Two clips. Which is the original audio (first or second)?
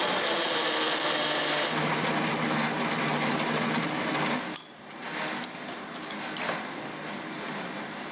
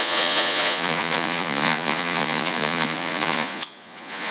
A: first